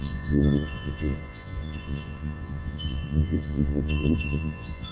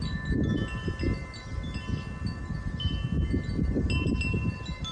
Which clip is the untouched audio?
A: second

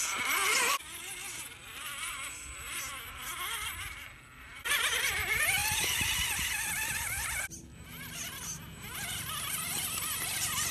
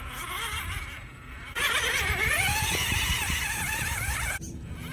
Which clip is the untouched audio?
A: first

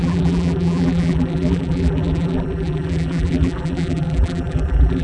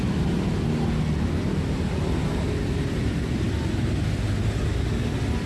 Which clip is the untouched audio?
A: second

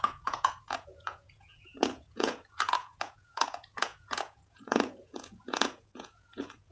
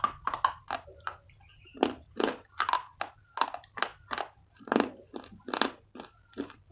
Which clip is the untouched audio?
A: second